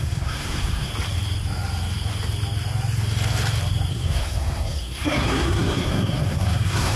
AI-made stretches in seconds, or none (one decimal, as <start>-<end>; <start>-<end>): 0.0-0.9; 3.9-7.0